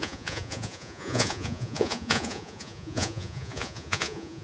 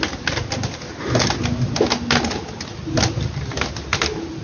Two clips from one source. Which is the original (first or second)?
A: second